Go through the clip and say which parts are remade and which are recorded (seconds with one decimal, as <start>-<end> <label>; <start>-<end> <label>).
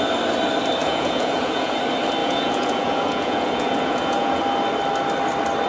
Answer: 0.0-0.8 recorded; 0.8-1.8 remade; 1.8-2.2 recorded; 2.2-4.4 remade; 4.4-5.7 recorded